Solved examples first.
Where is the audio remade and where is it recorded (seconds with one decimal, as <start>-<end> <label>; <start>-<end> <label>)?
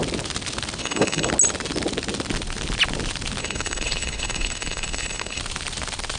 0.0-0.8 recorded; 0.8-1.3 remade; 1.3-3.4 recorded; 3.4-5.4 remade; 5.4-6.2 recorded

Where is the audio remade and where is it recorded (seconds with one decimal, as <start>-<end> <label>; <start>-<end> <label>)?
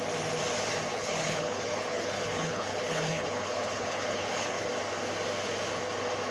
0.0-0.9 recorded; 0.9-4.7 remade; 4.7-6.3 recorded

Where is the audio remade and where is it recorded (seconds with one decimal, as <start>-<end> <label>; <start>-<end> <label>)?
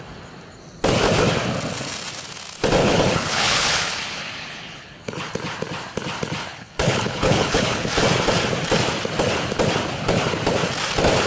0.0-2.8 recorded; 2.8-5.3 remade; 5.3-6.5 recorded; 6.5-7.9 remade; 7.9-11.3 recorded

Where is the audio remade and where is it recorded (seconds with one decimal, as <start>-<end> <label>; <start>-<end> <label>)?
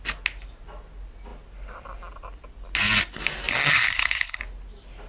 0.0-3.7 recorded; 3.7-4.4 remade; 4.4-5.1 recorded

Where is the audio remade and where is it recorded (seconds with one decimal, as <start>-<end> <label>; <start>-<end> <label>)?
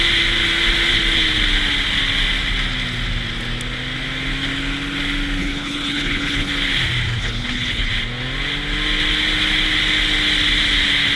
0.0-5.4 recorded; 5.4-6.5 remade; 6.5-7.2 recorded; 7.2-7.9 remade; 7.9-11.2 recorded